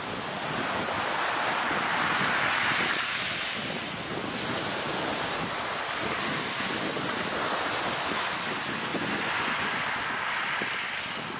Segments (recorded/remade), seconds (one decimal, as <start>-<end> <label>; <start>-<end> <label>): 0.0-8.9 recorded; 8.9-9.8 remade; 9.8-11.4 recorded